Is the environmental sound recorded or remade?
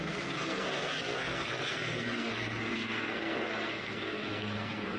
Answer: remade